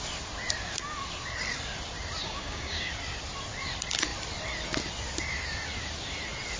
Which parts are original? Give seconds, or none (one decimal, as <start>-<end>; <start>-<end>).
0.0-2.2; 2.9-6.6